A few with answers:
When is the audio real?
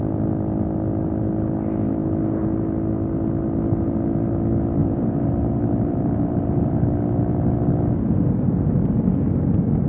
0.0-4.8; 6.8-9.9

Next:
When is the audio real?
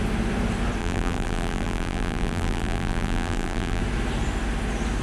0.0-0.8; 3.8-5.0